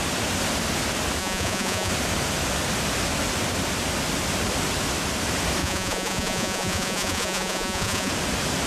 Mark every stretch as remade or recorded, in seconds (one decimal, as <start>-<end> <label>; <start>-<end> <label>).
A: 0.0-1.2 recorded; 1.2-1.9 remade; 1.9-5.6 recorded; 5.6-8.1 remade; 8.1-8.7 recorded